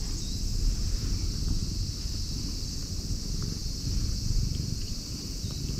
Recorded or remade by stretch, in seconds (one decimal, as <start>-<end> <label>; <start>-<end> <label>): 0.0-5.8 recorded